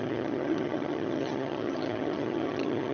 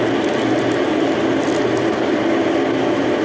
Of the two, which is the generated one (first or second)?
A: first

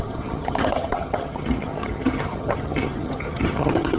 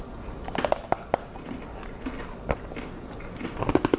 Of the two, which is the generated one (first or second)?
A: first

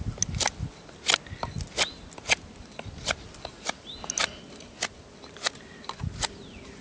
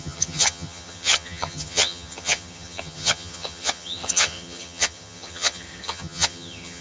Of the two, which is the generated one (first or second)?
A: second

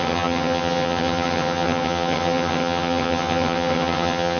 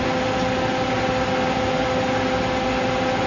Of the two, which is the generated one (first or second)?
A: first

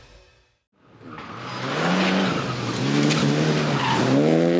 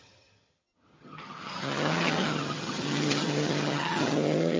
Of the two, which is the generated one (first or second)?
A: second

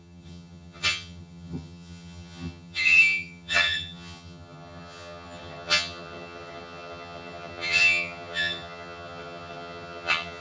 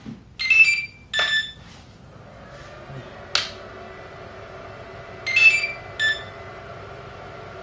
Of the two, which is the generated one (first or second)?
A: first